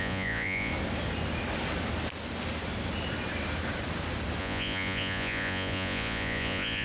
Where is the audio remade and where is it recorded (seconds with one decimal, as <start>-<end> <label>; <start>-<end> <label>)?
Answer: 0.0-0.7 remade; 0.7-4.4 recorded; 4.4-6.8 remade